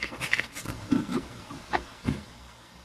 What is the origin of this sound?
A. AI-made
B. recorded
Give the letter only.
A